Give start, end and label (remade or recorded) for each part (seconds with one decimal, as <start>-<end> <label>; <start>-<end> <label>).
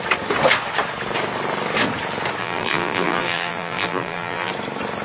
0.0-2.4 recorded; 2.4-4.5 remade; 4.5-5.0 recorded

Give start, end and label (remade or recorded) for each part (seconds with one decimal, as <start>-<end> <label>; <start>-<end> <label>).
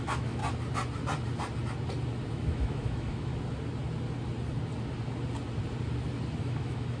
0.0-0.4 remade; 0.4-2.3 recorded; 2.3-3.3 remade; 3.3-6.4 recorded; 6.4-7.0 remade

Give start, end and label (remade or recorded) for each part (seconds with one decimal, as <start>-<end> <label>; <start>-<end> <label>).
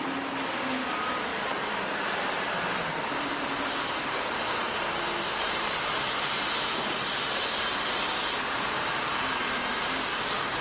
0.0-1.3 recorded; 1.3-6.1 remade; 6.1-10.6 recorded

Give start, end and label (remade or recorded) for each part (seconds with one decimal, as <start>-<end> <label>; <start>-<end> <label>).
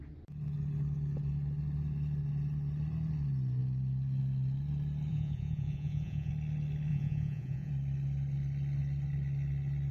0.0-5.1 recorded; 5.1-6.3 remade; 6.3-6.9 recorded; 6.9-7.7 remade; 7.7-9.9 recorded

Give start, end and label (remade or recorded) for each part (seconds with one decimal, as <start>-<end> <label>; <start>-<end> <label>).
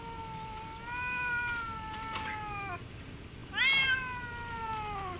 0.0-5.2 recorded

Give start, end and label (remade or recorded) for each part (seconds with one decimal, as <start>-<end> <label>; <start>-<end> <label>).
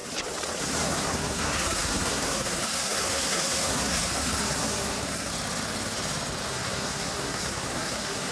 0.0-0.6 recorded; 0.6-5.3 remade; 5.3-6.5 recorded; 6.5-8.3 remade